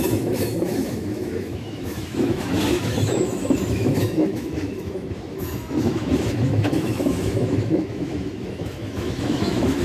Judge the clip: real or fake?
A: fake